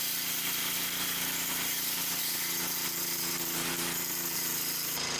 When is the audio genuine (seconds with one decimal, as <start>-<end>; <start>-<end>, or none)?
none